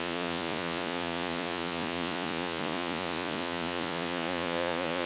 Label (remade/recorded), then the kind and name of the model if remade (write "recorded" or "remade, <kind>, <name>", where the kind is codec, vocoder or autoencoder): remade, vocoder, Vocos